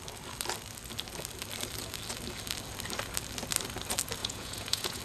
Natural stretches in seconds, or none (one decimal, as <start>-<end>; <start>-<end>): 0.0-4.2